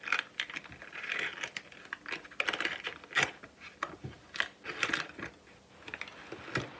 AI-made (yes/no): no